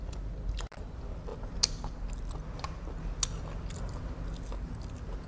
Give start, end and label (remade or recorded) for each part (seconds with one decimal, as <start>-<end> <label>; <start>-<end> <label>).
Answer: 0.0-5.3 recorded